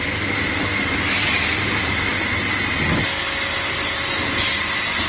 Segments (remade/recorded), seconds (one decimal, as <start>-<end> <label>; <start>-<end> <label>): 0.0-5.1 recorded